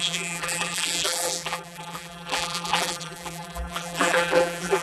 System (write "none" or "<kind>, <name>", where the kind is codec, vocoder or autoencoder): vocoder, BigVGAN v2